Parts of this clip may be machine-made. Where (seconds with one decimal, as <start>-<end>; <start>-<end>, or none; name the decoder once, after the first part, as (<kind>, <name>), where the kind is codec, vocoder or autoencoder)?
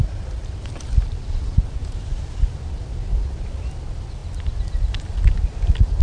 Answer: none